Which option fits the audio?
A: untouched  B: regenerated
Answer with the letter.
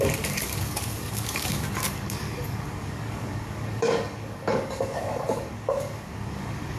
B